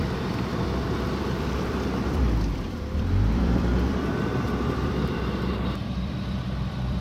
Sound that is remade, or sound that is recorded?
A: remade